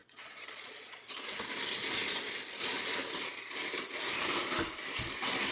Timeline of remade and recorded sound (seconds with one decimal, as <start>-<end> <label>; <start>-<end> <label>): 0.0-1.3 remade; 1.3-5.5 recorded